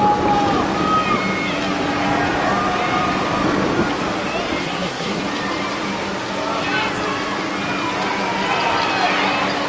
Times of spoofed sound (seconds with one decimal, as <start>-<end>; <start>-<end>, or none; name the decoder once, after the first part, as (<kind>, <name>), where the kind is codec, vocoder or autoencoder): 4.6-5.2 (codec, SNAC)